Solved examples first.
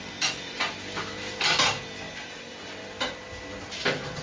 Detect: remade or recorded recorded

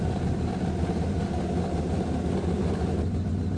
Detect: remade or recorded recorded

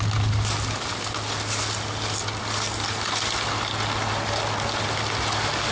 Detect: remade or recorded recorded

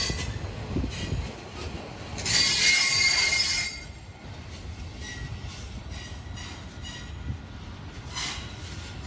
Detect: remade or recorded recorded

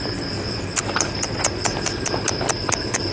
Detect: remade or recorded recorded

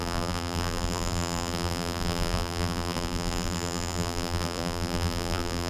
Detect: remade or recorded remade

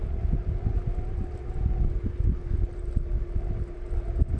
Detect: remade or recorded recorded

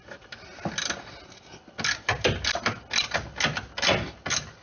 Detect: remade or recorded recorded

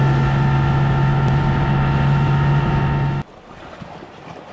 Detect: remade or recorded recorded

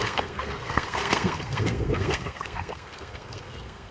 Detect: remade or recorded remade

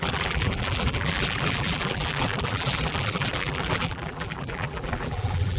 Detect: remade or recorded remade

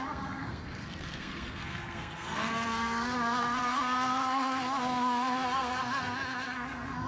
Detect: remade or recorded remade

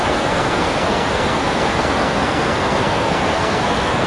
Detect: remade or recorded remade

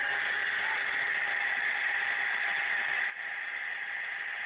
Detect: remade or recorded remade